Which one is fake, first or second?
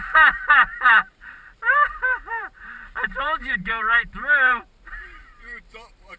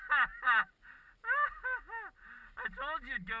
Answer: first